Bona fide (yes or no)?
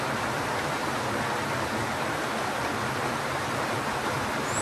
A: yes